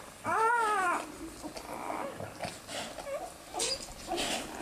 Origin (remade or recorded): recorded